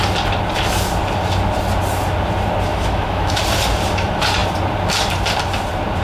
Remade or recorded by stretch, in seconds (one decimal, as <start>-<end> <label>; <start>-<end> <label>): 0.0-2.7 recorded; 2.7-3.4 remade; 3.4-6.0 recorded